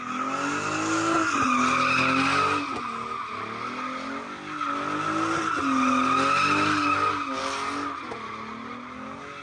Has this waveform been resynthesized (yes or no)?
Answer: no